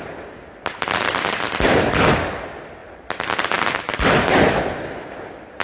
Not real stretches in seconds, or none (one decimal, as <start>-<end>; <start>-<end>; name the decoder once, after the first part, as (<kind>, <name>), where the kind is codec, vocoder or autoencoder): none